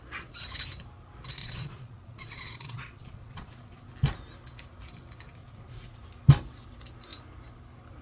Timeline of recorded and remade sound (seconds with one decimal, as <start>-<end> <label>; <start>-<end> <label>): 0.0-1.4 recorded; 1.4-3.9 remade; 3.9-5.4 recorded; 5.4-6.0 remade; 6.0-8.0 recorded